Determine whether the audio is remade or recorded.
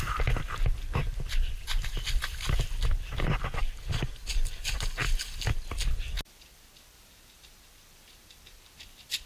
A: recorded